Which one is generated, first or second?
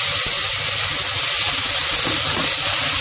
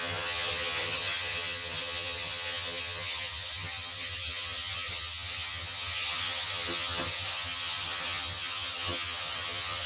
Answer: second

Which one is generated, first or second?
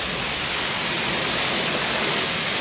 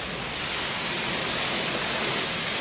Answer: first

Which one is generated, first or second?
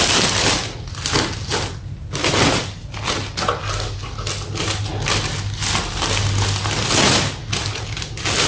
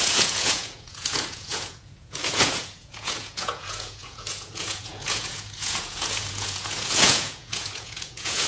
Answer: second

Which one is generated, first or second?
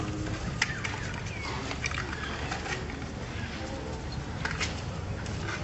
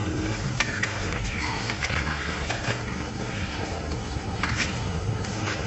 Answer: second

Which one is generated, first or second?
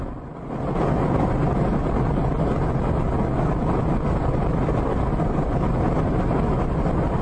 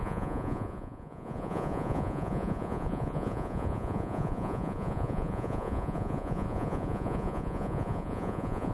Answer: second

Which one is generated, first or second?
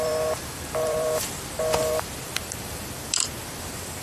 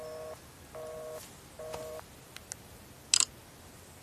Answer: first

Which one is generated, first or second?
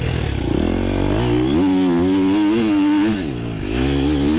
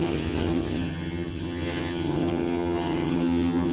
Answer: second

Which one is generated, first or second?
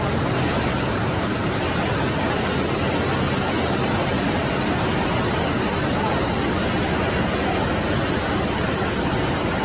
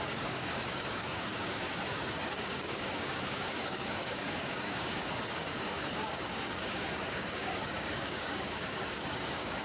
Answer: second